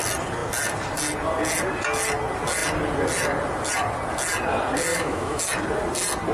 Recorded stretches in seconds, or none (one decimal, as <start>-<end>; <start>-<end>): 0.0-4.9; 5.4-6.3

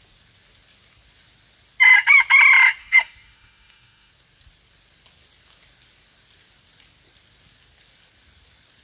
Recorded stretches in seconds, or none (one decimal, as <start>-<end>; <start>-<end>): 0.0-2.8; 4.1-8.8

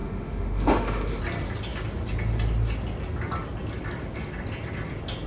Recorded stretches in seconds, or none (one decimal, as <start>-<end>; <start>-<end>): 1.2-5.3

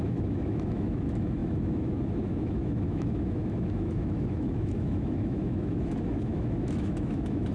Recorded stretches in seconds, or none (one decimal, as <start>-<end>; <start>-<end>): none

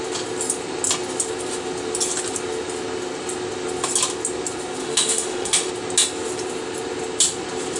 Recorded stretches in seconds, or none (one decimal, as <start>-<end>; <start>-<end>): 0.0-4.8; 5.7-7.8